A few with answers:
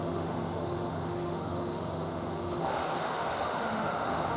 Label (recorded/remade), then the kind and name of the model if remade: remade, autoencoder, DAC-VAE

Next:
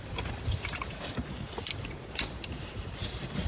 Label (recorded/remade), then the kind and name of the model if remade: remade, vocoder, BigVGAN v2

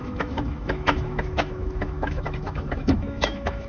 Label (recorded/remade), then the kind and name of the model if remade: remade, autoencoder, DAC-VAE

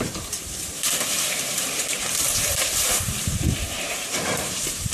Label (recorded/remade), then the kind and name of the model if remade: remade, vocoder, BigVGAN v2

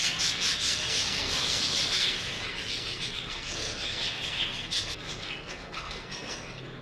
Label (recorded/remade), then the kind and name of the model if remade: remade, codec, SNAC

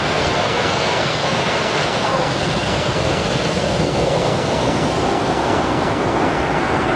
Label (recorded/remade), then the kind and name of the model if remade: remade, codec, SNAC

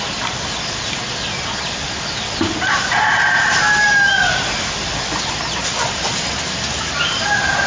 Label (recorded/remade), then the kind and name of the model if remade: recorded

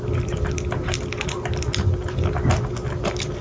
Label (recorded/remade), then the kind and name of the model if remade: recorded